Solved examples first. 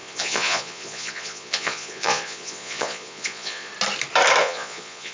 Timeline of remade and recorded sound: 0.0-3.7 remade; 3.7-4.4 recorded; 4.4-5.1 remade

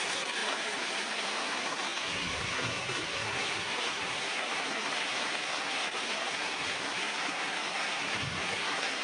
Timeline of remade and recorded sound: 0.0-9.0 remade

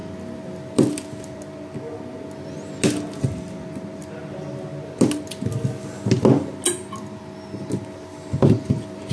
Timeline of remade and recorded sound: 0.0-9.1 recorded

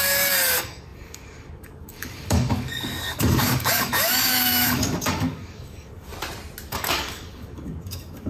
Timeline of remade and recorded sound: 0.0-6.1 remade; 6.1-6.7 recorded; 6.7-8.3 remade

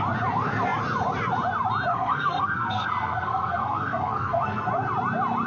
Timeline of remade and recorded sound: 0.0-1.9 recorded; 1.9-4.7 remade; 4.7-5.5 recorded

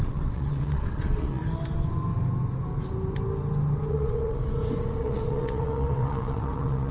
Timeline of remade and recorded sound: 0.0-1.4 remade; 1.4-3.9 recorded; 3.9-4.5 remade; 4.5-5.0 recorded; 5.0-6.9 remade

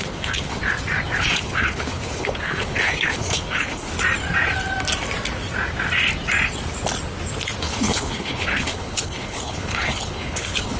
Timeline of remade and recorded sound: 0.0-0.6 remade; 0.6-1.2 recorded; 1.2-3.9 remade; 3.9-7.6 recorded; 7.6-10.8 remade

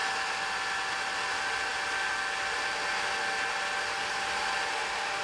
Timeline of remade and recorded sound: 0.0-5.2 recorded